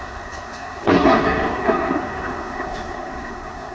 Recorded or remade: remade